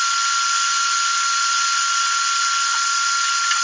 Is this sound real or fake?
real